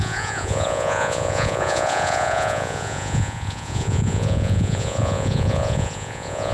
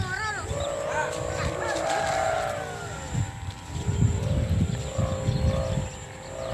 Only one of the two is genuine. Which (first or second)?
second